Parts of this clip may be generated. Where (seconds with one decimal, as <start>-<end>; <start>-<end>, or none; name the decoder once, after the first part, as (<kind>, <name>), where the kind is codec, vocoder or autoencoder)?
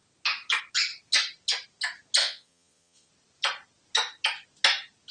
2.2-3.1 (vocoder, Vocos)